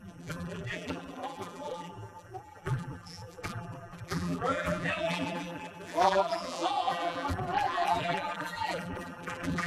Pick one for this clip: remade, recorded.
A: remade